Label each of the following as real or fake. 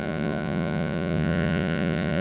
fake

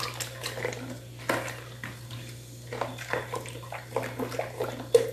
real